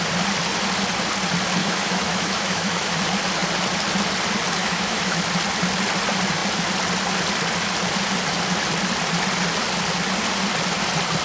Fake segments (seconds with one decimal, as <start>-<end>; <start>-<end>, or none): 1.6-2.9; 4.6-5.2

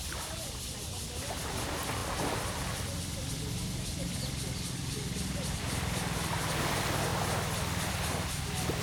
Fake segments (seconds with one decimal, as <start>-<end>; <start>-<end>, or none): none

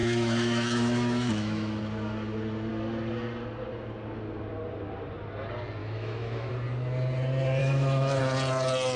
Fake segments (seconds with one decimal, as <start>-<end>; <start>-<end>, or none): 0.0-1.8; 5.8-6.5; 7.6-8.2

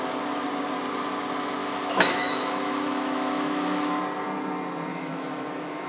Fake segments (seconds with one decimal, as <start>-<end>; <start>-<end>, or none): 1.6-4.0; 4.9-5.9

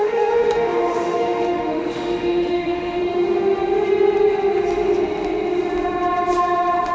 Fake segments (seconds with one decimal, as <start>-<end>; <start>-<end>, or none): 0.0-3.0